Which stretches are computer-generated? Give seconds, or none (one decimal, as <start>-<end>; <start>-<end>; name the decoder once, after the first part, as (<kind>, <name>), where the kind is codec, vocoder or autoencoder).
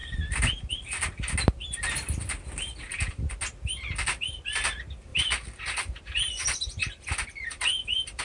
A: 0.0-3.3 (vocoder, BigVGAN v2); 5.1-5.6; 6.8-8.2